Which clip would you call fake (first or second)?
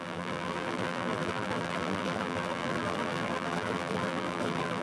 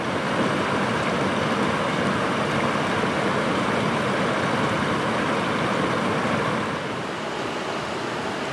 first